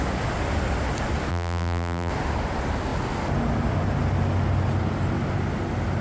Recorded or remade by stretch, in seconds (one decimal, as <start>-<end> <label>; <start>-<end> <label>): 0.0-1.3 recorded; 1.3-2.1 remade; 2.1-6.0 recorded